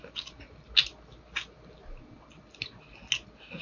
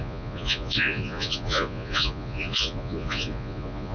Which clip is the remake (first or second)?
second